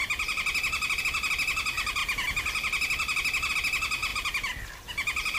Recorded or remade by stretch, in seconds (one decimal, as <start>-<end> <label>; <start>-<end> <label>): 0.0-5.4 recorded